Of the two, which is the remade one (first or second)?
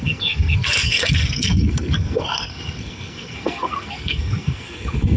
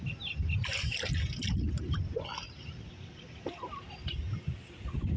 first